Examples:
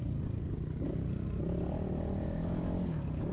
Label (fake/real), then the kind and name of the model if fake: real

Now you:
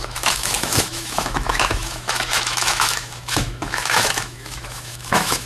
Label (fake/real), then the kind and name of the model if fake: fake, autoencoder, DAC-VAE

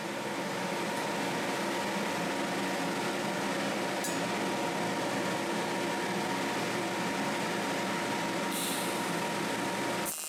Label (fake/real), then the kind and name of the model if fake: real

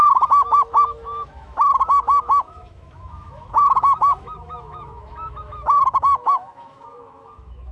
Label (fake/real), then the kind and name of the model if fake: fake, autoencoder, DAC-VAE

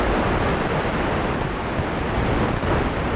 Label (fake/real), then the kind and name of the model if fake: real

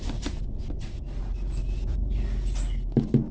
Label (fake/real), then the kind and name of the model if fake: real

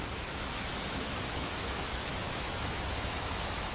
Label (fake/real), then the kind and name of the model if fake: fake, autoencoder, DAC-VAE